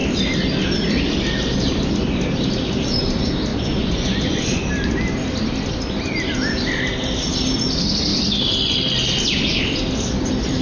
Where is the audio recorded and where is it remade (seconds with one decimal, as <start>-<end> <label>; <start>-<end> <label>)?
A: 0.0-3.5 recorded; 3.5-4.6 remade; 4.6-10.6 recorded